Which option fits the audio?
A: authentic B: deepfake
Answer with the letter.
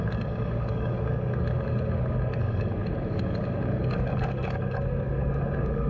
B